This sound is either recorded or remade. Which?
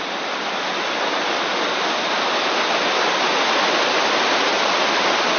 recorded